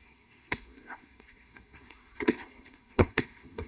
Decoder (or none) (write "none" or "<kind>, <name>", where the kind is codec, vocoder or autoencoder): codec, SNAC